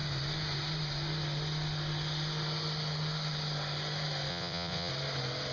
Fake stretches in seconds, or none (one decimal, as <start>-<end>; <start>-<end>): 4.3-4.9